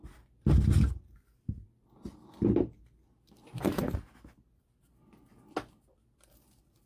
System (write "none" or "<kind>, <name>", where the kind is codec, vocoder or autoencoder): none